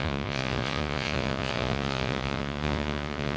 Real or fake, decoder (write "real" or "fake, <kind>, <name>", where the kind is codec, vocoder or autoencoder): fake, vocoder, Vocos